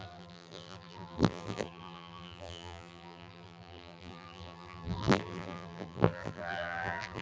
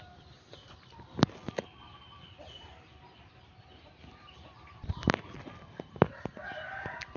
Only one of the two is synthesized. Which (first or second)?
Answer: first